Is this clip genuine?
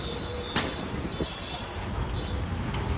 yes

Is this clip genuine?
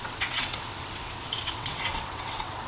no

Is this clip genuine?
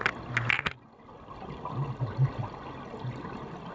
yes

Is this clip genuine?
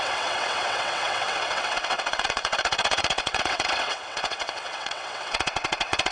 no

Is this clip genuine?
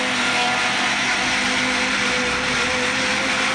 yes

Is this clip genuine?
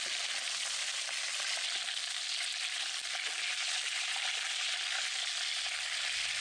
yes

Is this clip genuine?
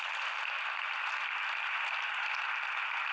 yes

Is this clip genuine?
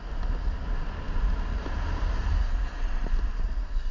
yes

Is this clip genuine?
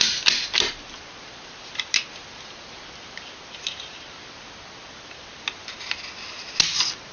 yes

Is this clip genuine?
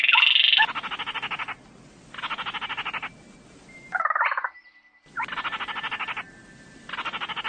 yes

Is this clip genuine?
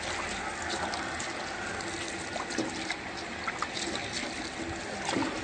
yes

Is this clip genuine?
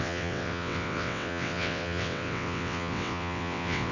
no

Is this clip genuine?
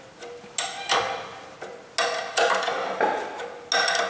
yes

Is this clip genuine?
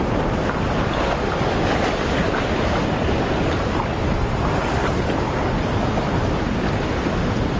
yes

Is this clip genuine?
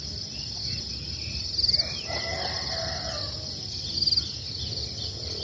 yes